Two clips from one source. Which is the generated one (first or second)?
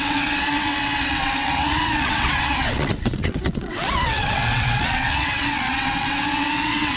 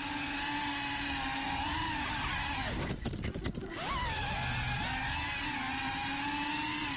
first